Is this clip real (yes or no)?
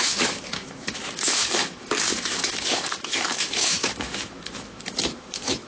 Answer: no